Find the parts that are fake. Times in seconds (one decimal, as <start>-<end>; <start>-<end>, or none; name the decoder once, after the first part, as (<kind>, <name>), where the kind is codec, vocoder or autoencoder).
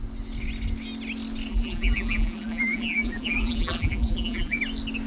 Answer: 1.5-4.6 (vocoder, BigVGAN v2)